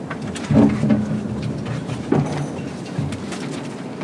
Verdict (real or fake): real